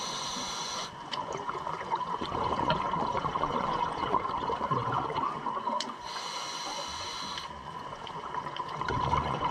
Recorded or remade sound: remade